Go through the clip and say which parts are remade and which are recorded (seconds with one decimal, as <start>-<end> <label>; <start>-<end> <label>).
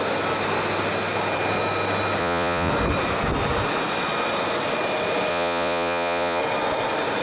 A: 0.0-2.2 recorded; 2.2-2.7 remade; 2.7-5.3 recorded; 5.3-6.4 remade; 6.4-7.2 recorded